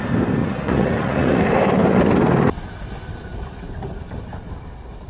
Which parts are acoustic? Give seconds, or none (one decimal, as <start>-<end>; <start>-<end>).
0.0-0.4; 1.4-5.1